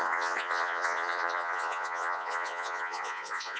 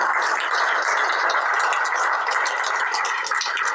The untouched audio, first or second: second